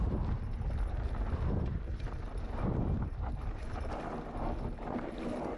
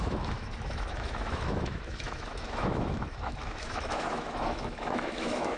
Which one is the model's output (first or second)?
second